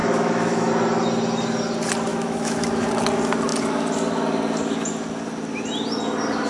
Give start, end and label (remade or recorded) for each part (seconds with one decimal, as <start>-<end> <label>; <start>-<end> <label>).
0.0-0.7 remade; 0.7-2.1 recorded; 2.1-2.9 remade; 2.9-6.5 recorded